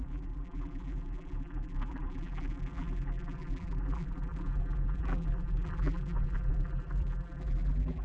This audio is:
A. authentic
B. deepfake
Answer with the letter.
B